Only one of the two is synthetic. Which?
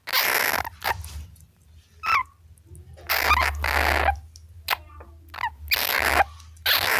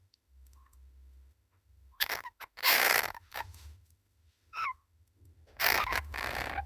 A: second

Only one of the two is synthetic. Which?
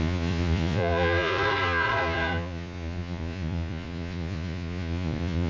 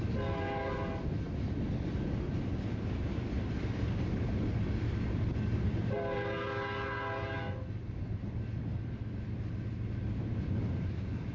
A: first